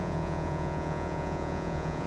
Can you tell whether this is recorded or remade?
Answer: remade